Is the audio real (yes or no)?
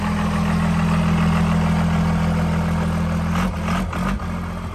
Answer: yes